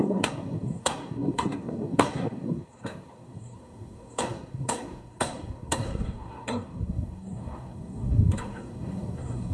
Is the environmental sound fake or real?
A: fake